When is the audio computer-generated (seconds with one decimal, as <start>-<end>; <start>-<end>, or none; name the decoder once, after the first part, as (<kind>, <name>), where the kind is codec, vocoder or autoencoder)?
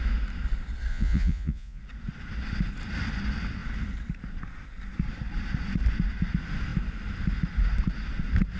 0.9-1.8 (vocoder, Vocos)